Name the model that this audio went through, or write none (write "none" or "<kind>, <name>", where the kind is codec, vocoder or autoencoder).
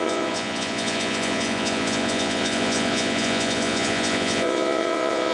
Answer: vocoder, Vocos